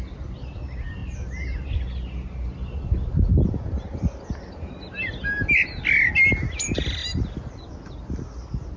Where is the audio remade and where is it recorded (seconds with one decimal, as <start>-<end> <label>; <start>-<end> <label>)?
0.0-8.8 recorded